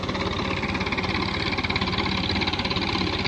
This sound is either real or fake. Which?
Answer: real